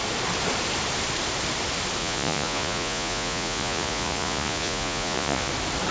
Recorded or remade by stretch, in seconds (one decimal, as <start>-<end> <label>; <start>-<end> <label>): 0.0-2.0 recorded; 2.0-5.5 remade; 5.5-5.9 recorded